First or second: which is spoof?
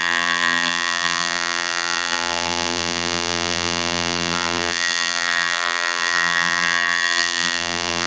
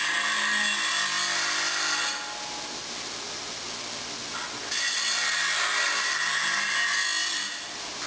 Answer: first